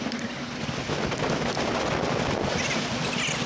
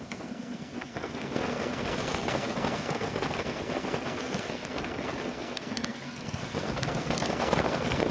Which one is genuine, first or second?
first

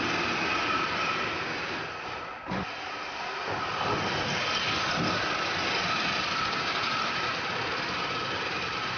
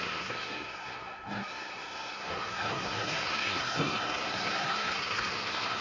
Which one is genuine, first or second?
first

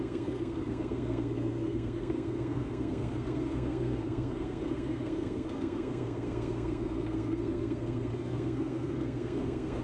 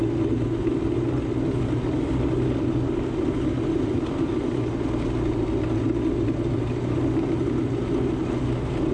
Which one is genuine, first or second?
second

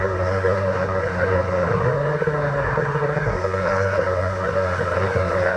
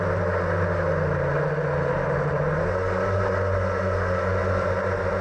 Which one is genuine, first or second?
second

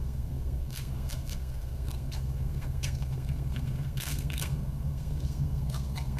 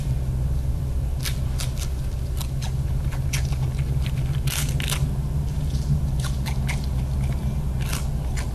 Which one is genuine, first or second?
second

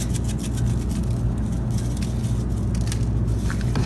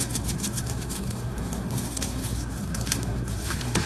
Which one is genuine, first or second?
first